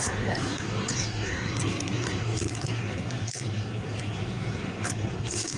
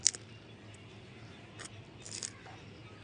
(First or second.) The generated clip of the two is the first